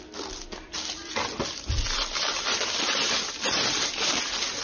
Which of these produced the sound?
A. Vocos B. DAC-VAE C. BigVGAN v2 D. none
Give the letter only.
D